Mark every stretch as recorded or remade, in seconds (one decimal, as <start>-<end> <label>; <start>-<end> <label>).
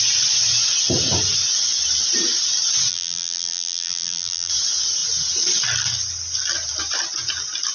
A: 0.0-2.9 recorded; 2.9-4.5 remade; 4.5-7.7 recorded